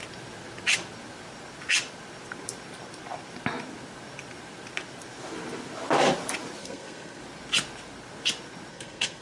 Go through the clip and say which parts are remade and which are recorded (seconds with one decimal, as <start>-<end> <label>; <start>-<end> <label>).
0.0-6.6 recorded; 6.6-7.2 remade; 7.2-8.7 recorded; 8.7-9.2 remade